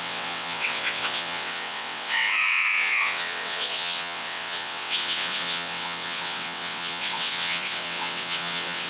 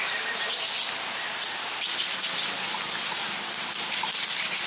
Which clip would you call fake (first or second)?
first